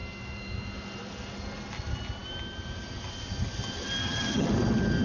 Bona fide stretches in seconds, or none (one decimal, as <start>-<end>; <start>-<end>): 0.0-4.0; 4.5-5.0